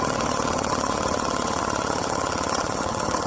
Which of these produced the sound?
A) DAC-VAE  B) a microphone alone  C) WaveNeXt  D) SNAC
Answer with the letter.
C